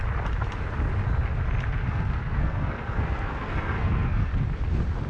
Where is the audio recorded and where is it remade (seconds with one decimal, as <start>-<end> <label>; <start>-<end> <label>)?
0.0-1.8 recorded; 1.8-4.3 remade; 4.3-5.1 recorded